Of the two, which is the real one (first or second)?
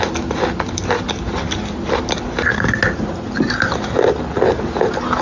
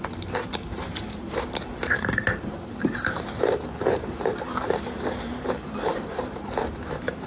first